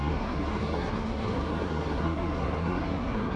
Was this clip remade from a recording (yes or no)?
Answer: yes